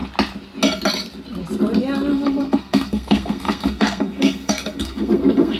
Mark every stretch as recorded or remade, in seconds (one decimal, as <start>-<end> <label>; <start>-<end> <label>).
0.0-2.1 recorded; 2.1-5.6 remade